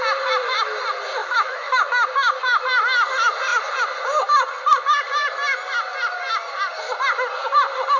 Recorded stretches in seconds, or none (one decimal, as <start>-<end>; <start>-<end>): 0.0-1.2; 1.8-8.0